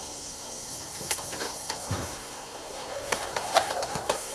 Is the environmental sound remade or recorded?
remade